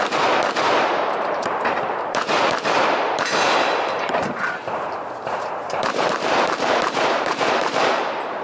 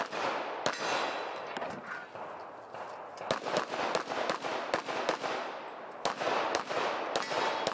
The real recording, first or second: second